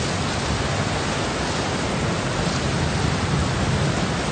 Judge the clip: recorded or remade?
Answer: recorded